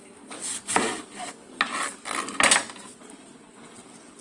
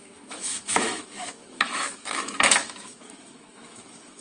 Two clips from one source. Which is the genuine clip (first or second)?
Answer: first